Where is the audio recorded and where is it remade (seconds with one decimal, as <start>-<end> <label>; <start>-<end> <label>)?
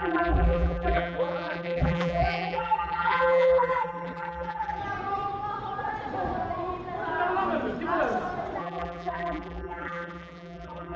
0.0-4.8 remade; 4.8-8.6 recorded; 8.6-11.0 remade